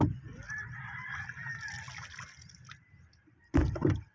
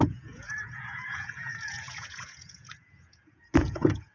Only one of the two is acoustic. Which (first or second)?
first